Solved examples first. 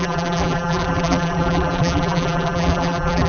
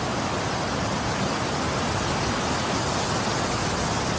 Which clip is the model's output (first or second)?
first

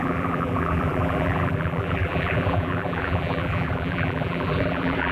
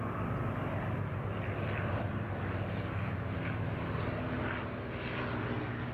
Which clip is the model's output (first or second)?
first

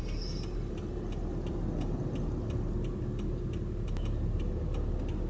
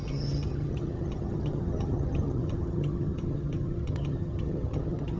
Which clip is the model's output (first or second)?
second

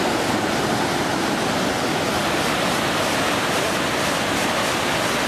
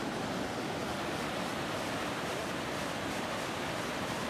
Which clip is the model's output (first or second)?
second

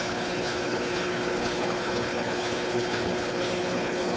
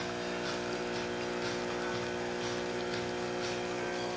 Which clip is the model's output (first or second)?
first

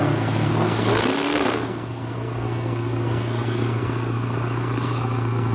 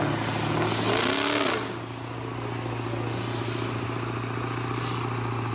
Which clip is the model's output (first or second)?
first